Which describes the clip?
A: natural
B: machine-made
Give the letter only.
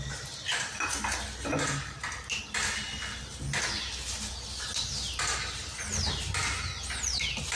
A